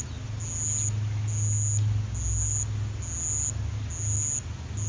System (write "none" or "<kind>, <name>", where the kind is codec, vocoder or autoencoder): none